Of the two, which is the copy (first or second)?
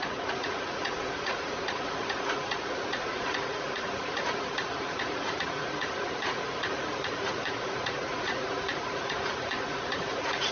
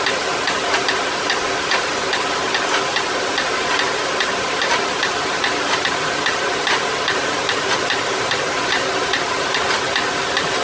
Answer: first